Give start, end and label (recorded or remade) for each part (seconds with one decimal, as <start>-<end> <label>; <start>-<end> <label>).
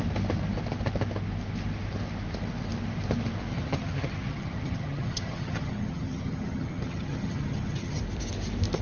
0.0-3.5 recorded; 3.5-8.0 remade; 8.0-8.8 recorded